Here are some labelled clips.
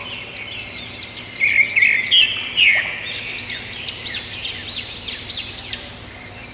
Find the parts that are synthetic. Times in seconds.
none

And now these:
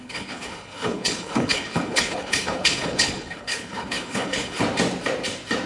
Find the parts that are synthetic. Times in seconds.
0.0-4.6

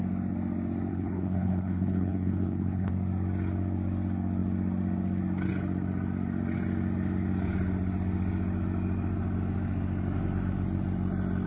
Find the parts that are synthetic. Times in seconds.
0.9-2.9

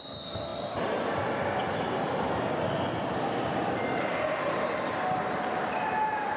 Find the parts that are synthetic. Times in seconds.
none

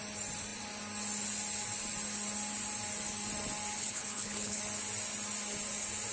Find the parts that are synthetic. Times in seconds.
3.8-4.6

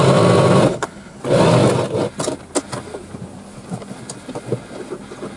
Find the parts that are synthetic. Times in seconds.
0.7-1.2